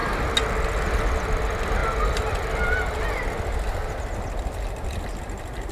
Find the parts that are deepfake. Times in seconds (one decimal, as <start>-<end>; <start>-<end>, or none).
none